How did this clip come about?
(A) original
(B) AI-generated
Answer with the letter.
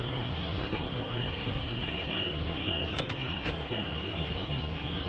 B